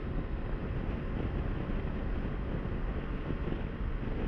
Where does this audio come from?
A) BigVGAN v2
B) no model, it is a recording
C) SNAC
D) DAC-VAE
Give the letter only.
B